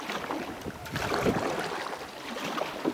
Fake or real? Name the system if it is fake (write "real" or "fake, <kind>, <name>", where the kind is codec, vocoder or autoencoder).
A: real